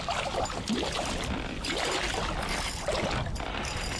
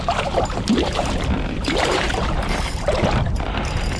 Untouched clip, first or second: first